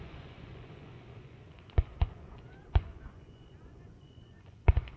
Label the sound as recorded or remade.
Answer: remade